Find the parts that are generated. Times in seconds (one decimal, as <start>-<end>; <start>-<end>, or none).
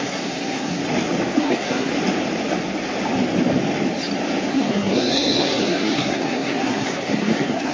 0.0-0.8; 1.4-1.9; 4.5-7.7